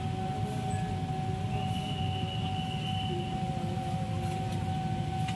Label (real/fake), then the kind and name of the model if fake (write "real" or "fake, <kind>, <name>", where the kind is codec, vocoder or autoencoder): real